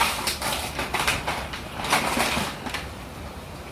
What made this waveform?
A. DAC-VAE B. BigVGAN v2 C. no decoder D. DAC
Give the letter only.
B